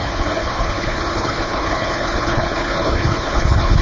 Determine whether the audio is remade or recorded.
remade